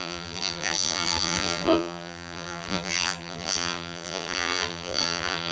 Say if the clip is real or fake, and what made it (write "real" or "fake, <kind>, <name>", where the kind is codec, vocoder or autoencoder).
fake, vocoder, BigVGAN v2